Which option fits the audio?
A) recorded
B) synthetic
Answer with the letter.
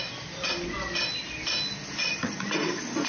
A